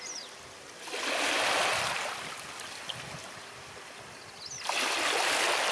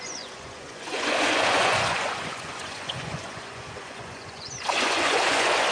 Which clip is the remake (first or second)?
second